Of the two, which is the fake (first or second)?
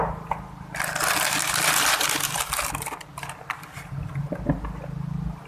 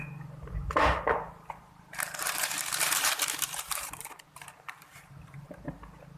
second